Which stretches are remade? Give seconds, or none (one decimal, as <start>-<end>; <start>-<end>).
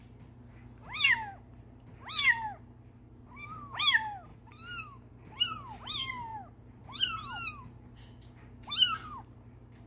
none